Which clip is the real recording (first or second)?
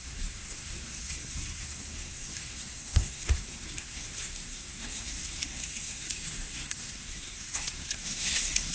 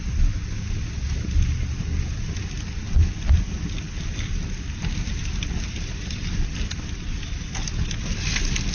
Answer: second